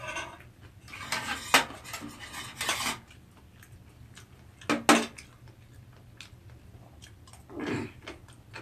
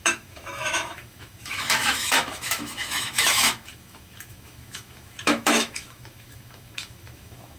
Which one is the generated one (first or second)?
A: second